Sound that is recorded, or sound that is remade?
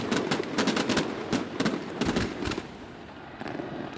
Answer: recorded